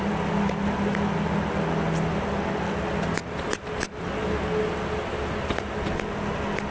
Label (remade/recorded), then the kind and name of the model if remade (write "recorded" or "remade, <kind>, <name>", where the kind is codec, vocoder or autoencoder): recorded